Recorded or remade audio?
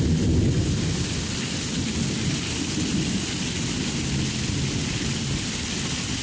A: recorded